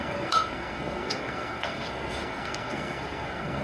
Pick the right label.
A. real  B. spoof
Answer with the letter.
B